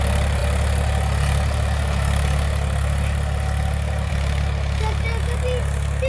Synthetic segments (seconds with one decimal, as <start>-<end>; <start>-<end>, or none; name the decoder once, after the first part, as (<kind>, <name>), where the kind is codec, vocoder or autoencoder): none